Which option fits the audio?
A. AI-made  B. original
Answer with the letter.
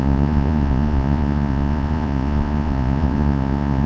A